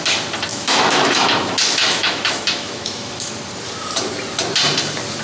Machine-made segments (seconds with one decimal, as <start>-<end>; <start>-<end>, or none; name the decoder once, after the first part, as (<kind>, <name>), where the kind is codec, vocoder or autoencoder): 0.5-3.3 (autoencoder, DAC-VAE)